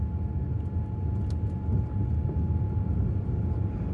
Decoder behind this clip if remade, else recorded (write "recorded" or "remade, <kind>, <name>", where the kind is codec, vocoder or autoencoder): recorded